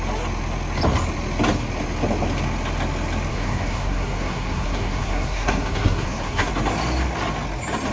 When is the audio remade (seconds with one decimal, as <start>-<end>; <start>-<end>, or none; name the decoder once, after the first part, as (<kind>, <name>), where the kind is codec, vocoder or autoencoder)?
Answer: 3.3-6.5 (codec, SNAC)